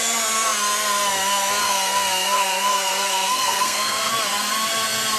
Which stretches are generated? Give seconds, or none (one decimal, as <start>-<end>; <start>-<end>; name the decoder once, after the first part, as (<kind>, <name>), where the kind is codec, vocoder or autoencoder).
1.6-4.1 (codec, SNAC)